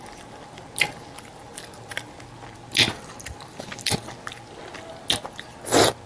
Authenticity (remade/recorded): recorded